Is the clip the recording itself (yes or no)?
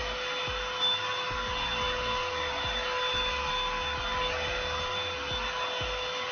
yes